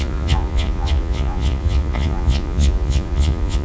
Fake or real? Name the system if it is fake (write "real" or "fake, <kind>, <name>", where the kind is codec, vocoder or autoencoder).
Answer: fake, vocoder, Vocos